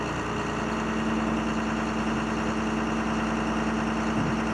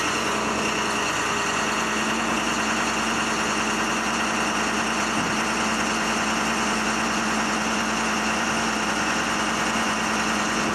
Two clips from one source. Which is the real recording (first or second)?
first